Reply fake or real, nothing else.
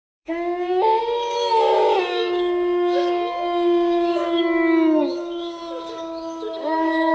fake